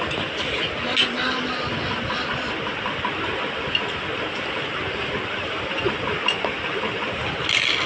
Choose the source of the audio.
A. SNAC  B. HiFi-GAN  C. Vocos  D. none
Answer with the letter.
D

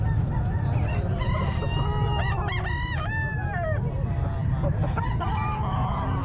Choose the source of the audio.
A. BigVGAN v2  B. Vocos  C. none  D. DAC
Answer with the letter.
C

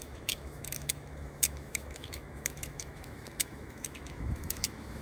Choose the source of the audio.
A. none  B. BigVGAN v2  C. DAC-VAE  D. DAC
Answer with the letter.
C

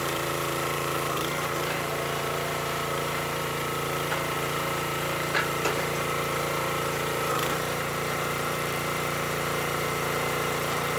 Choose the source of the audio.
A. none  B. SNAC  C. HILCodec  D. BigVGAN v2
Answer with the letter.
D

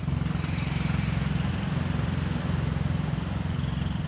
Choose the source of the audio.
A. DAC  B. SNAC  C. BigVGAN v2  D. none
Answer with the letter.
D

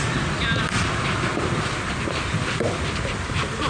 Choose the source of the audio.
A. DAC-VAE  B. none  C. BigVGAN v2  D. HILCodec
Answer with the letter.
B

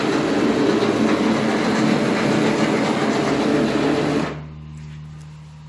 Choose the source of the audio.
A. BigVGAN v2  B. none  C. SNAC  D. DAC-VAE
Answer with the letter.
B